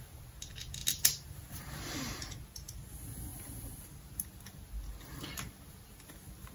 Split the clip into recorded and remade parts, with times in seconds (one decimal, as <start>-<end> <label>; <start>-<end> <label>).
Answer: 0.0-6.5 recorded

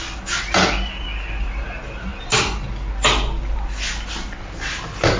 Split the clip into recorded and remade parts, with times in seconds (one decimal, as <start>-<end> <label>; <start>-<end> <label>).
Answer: 0.0-5.2 recorded

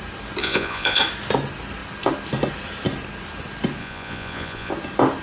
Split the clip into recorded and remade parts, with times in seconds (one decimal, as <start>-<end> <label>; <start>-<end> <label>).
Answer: 0.0-0.4 recorded; 0.4-1.0 remade; 1.0-3.8 recorded; 3.8-4.7 remade; 4.7-5.2 recorded

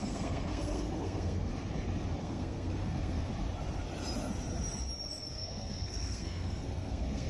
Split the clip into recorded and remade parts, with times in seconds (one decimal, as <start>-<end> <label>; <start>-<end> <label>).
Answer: 0.0-1.5 remade; 1.5-2.2 recorded; 2.2-3.3 remade; 3.3-5.3 recorded; 5.3-7.3 remade